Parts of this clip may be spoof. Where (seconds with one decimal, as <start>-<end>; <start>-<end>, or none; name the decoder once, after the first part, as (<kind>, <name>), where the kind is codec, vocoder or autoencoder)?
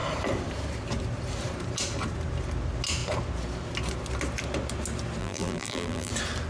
5.2-6.1 (vocoder, BigVGAN v2)